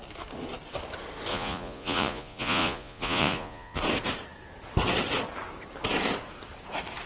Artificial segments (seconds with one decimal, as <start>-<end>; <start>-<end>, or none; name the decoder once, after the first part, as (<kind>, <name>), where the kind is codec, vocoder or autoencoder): 1.3-3.8 (vocoder, Vocos)